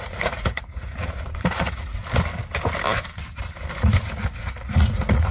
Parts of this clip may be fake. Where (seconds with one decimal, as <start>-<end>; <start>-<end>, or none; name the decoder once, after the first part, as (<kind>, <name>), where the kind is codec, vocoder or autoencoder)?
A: 0.0-2.0 (vocoder, Vocos); 4.4-5.3